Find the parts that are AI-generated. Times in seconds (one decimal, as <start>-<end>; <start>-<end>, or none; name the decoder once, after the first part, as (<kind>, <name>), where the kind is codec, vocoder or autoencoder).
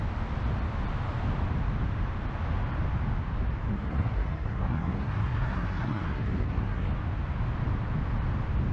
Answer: 3.7-6.9 (codec, SNAC)